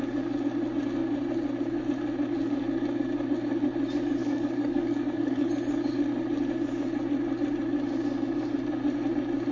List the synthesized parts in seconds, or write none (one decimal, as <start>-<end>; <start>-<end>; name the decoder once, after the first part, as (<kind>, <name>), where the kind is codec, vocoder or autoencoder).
4.2-5.5 (codec, DAC)